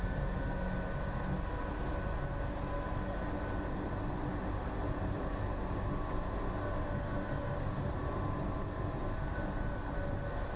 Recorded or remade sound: recorded